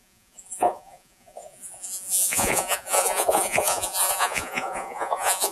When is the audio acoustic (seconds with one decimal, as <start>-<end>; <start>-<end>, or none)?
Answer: none